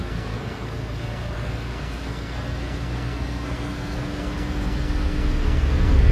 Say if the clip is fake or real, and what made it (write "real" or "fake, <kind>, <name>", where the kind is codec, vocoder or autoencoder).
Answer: fake, codec, SNAC